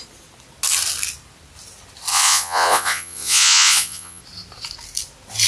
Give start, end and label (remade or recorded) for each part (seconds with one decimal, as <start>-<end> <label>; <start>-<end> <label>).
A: 0.0-2.1 recorded; 2.1-4.2 remade; 4.2-5.5 recorded